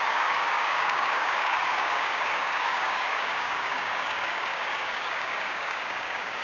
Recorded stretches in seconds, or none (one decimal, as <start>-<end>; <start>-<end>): none